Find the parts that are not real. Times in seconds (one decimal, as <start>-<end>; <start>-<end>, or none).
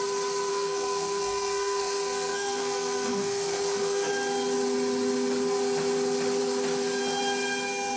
0.5-4.1